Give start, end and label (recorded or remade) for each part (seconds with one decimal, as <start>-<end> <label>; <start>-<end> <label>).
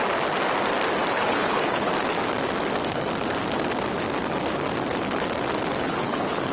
0.0-1.1 recorded; 1.1-1.9 remade; 1.9-5.8 recorded; 5.8-6.5 remade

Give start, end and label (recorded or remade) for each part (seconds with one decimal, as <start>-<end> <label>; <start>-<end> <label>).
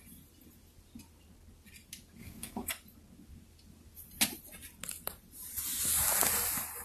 0.0-2.2 recorded; 2.2-2.7 remade; 2.7-6.8 recorded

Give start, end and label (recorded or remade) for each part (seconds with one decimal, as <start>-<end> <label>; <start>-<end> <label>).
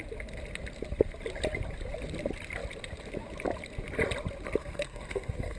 0.0-4.6 recorded; 4.6-5.6 remade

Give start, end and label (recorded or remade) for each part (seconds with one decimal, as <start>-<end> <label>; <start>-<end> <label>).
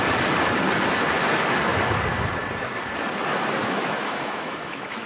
0.0-3.6 recorded; 3.6-5.1 remade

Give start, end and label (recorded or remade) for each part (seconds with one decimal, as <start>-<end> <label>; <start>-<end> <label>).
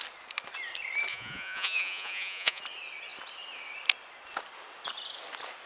0.0-1.1 recorded; 1.1-2.6 remade; 2.6-5.7 recorded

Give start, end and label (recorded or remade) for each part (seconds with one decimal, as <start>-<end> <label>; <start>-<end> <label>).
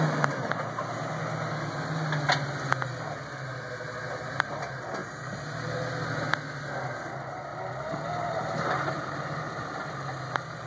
0.0-7.5 recorded; 7.5-9.4 remade; 9.4-10.7 recorded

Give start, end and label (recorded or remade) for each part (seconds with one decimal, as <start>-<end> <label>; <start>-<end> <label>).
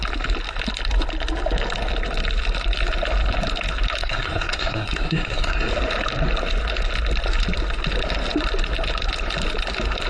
0.0-4.0 recorded; 4.0-5.7 remade; 5.7-10.1 recorded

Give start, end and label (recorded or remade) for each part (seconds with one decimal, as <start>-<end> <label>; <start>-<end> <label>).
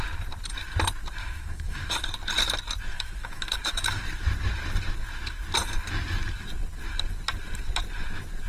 0.0-1.2 recorded; 1.2-2.1 remade; 2.1-2.9 recorded; 2.9-4.0 remade; 4.0-8.5 recorded